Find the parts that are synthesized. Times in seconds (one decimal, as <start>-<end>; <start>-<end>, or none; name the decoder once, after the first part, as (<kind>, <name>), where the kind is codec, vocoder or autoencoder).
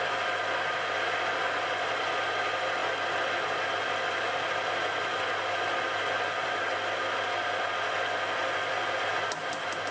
none